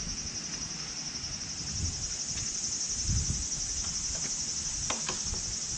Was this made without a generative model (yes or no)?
yes